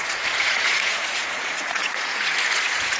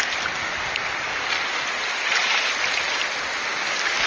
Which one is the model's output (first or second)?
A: first